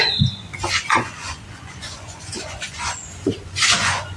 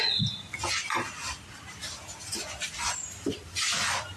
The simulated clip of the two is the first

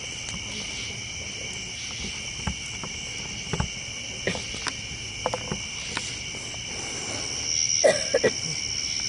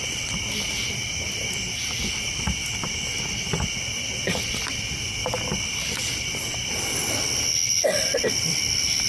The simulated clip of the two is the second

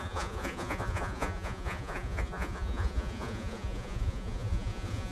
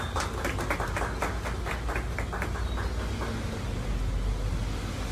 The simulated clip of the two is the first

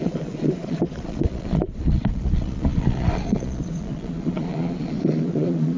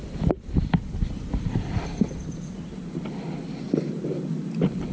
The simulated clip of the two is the first